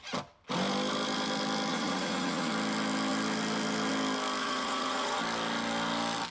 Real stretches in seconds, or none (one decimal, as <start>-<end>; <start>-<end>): 0.0-1.7; 2.5-4.4; 5.2-6.3